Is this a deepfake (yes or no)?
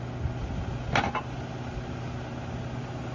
no